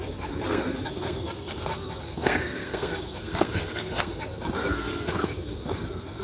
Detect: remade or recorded remade